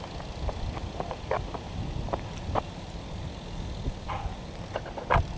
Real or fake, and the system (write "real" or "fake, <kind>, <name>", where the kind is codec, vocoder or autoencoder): real